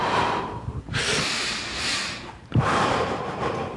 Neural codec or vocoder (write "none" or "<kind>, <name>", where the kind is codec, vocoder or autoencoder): vocoder, BigVGAN v2